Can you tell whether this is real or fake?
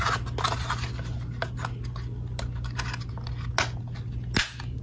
real